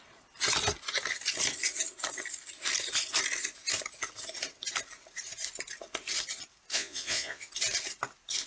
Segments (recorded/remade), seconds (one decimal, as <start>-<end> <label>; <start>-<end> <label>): 0.0-6.7 recorded; 6.7-7.5 remade; 7.5-8.5 recorded